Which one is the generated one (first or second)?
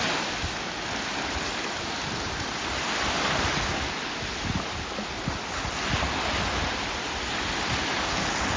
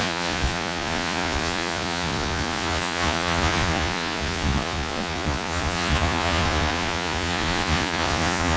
second